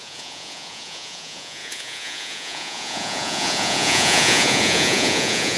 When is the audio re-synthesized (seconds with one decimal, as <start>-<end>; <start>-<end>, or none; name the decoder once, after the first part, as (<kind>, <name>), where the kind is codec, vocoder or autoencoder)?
0.0-5.6 (vocoder, Vocos)